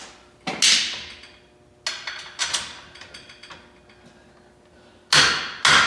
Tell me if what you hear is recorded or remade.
recorded